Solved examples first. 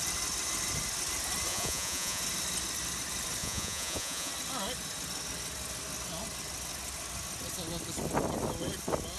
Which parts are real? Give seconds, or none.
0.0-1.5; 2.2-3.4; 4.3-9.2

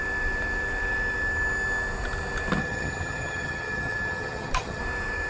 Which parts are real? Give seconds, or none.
0.0-2.6; 4.8-5.3

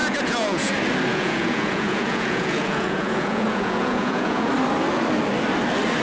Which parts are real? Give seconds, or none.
0.7-1.1; 4.5-6.0

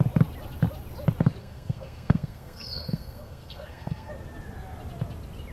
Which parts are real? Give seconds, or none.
0.0-1.4; 4.1-5.5

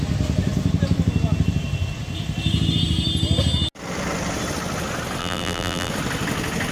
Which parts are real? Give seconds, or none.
0.0-5.2; 5.9-6.7